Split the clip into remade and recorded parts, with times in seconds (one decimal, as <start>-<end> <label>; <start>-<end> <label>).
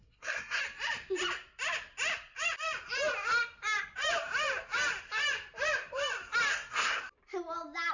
0.0-0.6 remade; 0.6-6.5 recorded; 6.5-7.0 remade; 7.0-7.9 recorded